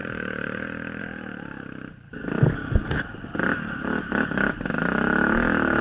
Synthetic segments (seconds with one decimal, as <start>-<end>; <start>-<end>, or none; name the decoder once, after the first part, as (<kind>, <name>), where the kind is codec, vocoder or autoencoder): 0.0-1.0 (vocoder, BigVGAN v2); 3.1-4.0